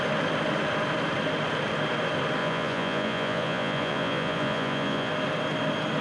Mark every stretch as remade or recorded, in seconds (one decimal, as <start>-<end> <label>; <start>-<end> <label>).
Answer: 0.0-2.4 recorded; 2.4-5.1 remade; 5.1-6.0 recorded